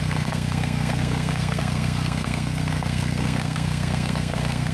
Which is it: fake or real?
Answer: fake